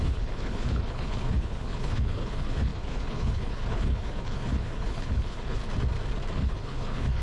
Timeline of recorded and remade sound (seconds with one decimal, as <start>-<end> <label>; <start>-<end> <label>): 0.0-5.6 remade; 5.6-6.3 recorded; 6.3-7.2 remade

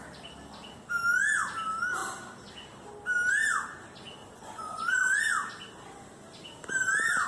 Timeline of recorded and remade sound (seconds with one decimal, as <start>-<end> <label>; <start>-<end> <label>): 0.0-4.2 recorded; 4.2-5.2 remade; 5.2-7.3 recorded

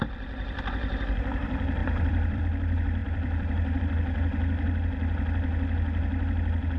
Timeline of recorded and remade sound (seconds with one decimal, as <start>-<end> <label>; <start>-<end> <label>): 0.0-1.8 recorded; 1.8-2.4 remade; 2.4-3.0 recorded; 3.0-3.8 remade; 3.8-6.8 recorded

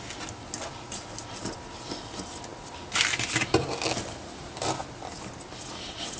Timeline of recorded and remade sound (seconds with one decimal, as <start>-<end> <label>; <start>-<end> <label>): 0.0-6.2 recorded

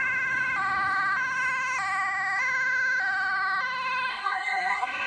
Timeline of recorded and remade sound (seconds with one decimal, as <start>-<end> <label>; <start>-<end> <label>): 0.0-4.1 recorded; 4.1-5.1 remade

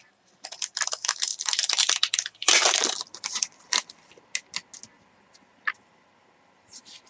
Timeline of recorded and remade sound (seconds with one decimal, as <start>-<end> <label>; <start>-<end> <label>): 0.0-1.3 recorded; 1.3-4.0 remade; 4.0-7.1 recorded

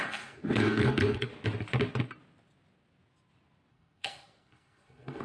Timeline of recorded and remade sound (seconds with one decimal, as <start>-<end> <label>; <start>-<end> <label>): 0.0-1.3 remade; 1.3-3.7 recorded; 3.7-5.2 remade

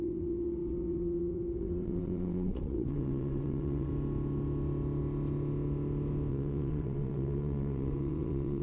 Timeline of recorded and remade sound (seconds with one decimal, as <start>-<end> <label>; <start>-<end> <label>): 0.0-3.9 remade; 3.9-6.3 recorded; 6.3-8.6 remade